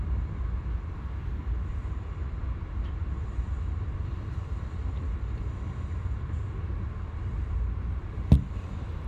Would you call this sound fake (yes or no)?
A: yes